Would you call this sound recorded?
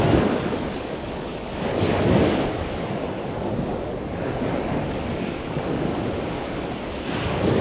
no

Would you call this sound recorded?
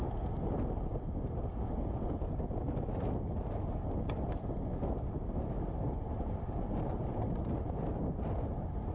yes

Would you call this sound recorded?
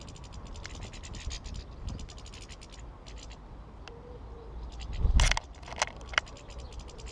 yes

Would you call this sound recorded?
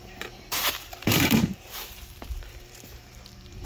no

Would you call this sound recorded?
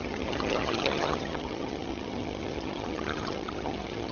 no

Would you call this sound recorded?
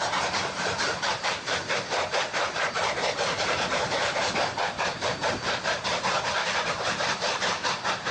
no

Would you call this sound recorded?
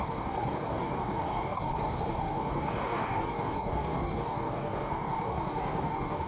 no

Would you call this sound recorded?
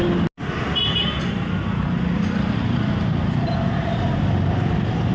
yes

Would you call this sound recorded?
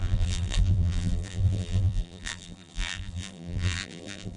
no